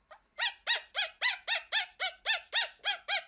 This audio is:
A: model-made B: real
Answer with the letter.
B